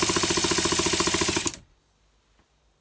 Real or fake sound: real